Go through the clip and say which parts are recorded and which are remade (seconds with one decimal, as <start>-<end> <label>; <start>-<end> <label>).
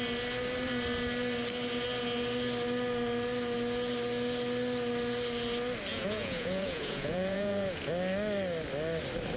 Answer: 0.0-5.9 recorded; 5.9-7.9 remade; 7.9-9.4 recorded